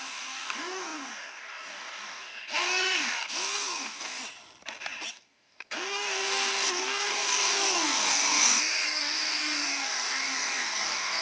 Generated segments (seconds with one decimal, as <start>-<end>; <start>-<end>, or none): 0.0-4.2; 5.1-11.2